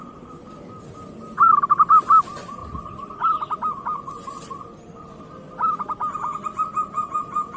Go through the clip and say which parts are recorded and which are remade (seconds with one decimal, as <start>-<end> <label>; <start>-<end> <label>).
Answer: 0.0-7.6 recorded